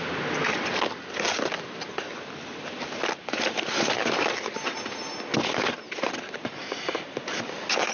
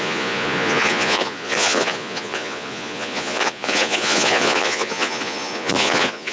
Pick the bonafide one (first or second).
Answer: first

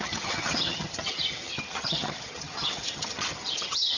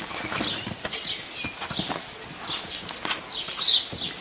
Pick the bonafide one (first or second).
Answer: second